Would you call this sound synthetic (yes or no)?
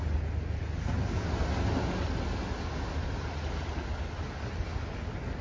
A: no